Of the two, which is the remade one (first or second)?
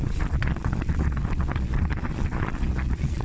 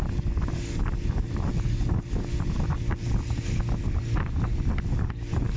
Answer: first